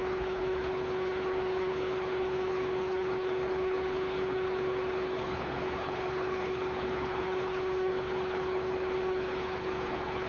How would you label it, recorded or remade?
remade